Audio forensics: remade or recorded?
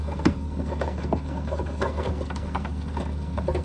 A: remade